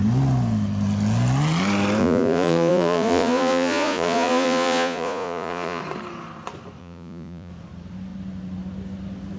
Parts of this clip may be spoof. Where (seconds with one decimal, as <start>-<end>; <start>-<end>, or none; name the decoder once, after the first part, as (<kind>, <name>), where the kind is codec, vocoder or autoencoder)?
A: 2.0-5.8 (vocoder, Vocos); 6.8-7.5